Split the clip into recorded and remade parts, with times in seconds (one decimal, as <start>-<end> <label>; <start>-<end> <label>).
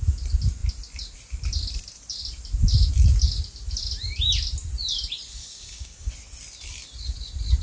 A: 0.0-5.4 recorded; 5.4-6.1 remade; 6.1-7.6 recorded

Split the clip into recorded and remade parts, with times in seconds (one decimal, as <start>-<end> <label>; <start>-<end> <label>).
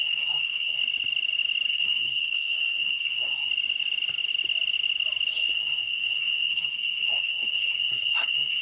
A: 0.0-0.8 remade; 0.8-1.7 recorded; 1.7-3.5 remade; 3.5-5.3 recorded; 5.3-8.6 remade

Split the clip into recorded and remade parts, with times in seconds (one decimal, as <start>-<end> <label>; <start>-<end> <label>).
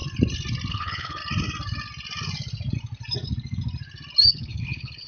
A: 0.0-0.7 recorded; 0.7-1.2 remade; 1.2-4.3 recorded; 4.3-5.1 remade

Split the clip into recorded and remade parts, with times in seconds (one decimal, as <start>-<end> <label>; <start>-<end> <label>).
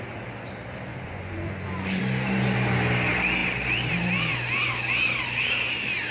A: 0.0-0.9 recorded; 0.9-2.0 remade; 2.0-6.1 recorded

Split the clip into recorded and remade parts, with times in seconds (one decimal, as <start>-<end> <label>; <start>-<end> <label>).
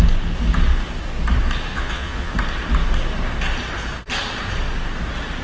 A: 0.0-1.7 recorded; 1.7-2.3 remade; 2.3-5.4 recorded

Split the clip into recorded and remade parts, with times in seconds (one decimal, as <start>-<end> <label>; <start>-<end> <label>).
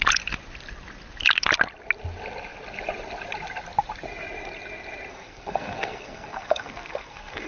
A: 0.0-5.1 recorded; 5.1-7.5 remade